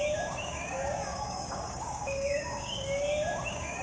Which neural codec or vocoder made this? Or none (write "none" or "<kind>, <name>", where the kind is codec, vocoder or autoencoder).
codec, DAC